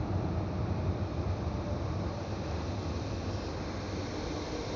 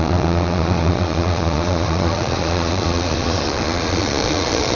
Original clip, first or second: first